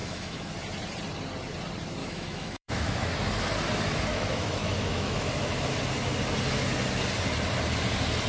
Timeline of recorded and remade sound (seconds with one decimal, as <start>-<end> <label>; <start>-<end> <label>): 0.0-0.5 remade; 0.5-2.0 recorded; 2.0-3.1 remade; 3.1-4.1 recorded; 4.1-5.3 remade; 5.3-8.3 recorded